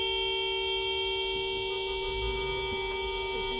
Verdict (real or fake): real